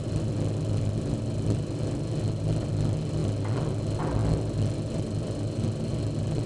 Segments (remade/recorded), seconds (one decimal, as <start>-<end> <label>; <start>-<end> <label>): 0.0-6.5 recorded